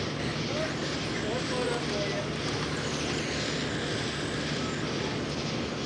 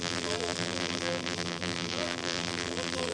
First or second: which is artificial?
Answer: second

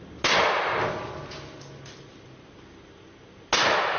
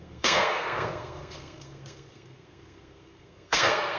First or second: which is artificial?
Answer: second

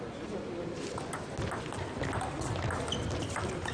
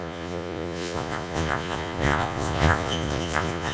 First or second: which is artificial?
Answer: second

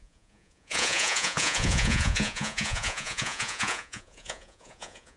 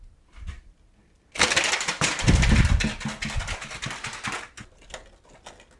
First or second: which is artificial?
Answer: first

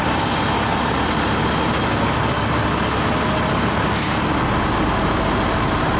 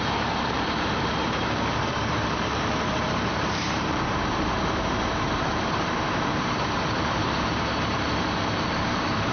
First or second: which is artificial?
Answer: second